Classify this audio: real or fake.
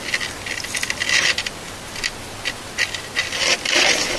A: real